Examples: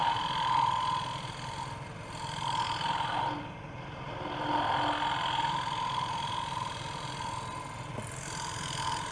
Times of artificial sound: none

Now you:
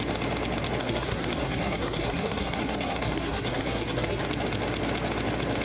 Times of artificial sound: 0.8-4.2

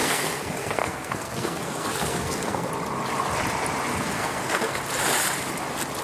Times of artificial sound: 0.0-2.7; 3.9-4.8

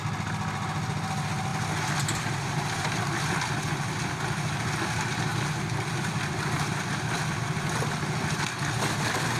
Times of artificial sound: 5.3-7.0

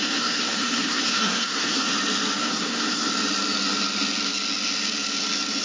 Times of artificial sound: 0.0-1.9; 2.4-3.1

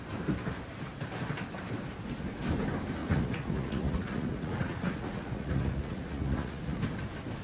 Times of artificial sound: 3.0-6.8

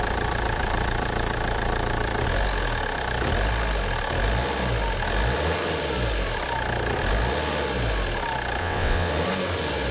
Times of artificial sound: 8.6-9.1

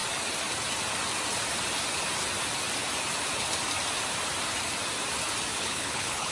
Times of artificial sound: 5.5-6.3